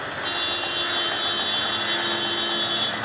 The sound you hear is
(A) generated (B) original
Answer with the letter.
B